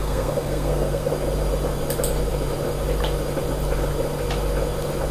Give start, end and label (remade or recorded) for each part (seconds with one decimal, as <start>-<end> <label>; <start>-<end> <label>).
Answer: 0.0-1.1 remade; 1.1-5.1 recorded